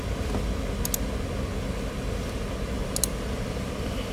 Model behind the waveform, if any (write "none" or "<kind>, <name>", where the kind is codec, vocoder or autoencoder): none